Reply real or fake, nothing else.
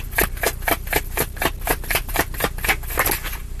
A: real